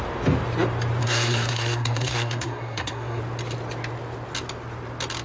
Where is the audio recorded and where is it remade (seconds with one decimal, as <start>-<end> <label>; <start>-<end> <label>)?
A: 0.0-1.0 recorded; 1.0-3.2 remade; 3.2-5.2 recorded